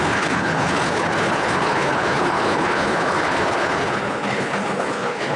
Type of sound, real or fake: fake